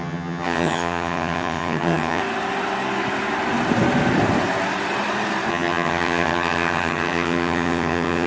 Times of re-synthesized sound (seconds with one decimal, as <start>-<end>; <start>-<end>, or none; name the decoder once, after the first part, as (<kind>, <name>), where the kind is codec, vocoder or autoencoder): 0.0-2.2 (vocoder, HiFi-GAN); 5.5-8.3